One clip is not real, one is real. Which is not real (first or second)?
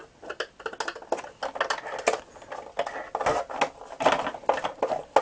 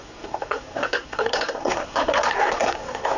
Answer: second